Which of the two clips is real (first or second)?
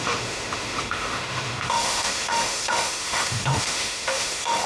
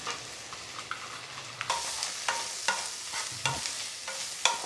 second